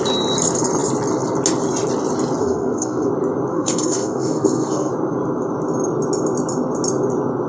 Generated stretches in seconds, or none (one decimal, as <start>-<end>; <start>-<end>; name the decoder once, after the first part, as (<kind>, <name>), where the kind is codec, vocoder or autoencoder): 2.4-3.1 (codec, SNAC); 3.5-4.9

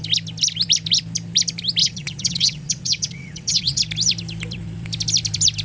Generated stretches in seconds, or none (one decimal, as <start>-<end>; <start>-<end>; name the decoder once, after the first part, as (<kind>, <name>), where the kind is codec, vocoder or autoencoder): 1.8-3.8 (vocoder, WaveNeXt)

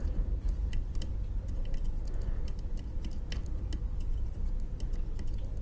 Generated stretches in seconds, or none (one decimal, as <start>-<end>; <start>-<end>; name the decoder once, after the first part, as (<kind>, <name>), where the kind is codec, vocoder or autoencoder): 0.0-0.7 (vocoder, Vocos)

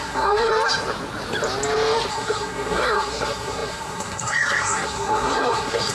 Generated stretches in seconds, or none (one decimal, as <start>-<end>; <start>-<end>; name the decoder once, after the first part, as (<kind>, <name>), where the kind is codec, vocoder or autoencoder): 0.0-0.5 (codec, SNAC); 2.1-5.9

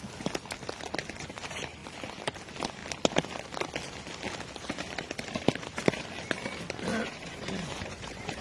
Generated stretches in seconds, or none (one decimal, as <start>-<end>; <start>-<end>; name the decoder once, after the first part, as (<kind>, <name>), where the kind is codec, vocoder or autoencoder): 6.9-8.4 (vocoder, Vocos)

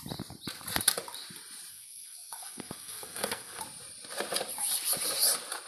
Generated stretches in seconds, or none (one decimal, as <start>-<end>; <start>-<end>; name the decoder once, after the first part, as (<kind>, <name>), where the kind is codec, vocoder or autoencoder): 1.7-3.6 (codec, SNAC)

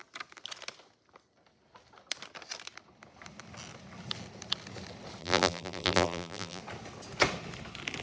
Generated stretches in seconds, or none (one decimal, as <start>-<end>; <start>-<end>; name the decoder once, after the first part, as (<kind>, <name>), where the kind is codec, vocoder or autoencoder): 5.2-6.6 (vocoder, BigVGAN v2)